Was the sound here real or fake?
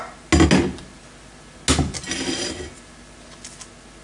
real